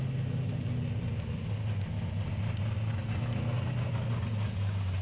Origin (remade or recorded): recorded